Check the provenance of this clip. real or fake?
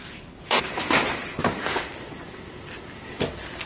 fake